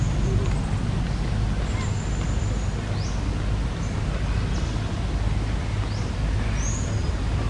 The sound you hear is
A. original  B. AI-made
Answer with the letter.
A